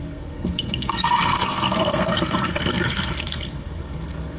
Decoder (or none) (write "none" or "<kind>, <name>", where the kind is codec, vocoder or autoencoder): codec, SNAC